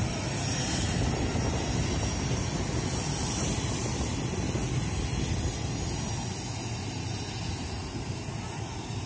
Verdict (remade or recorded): recorded